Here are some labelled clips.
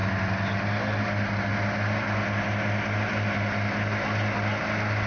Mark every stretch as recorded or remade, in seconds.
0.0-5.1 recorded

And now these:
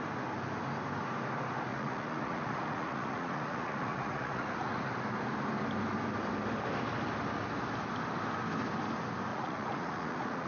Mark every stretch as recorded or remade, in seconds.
0.0-1.7 recorded; 1.7-4.9 remade; 4.9-9.3 recorded; 9.3-10.5 remade

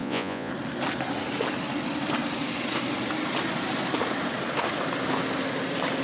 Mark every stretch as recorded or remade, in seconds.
0.0-0.5 remade; 0.5-6.0 recorded

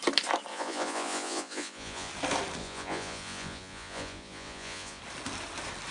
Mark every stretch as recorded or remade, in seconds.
0.0-0.5 recorded; 0.5-2.1 remade; 2.1-2.6 recorded; 2.6-5.0 remade; 5.0-5.9 recorded